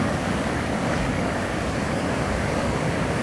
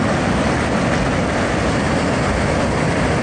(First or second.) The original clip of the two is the second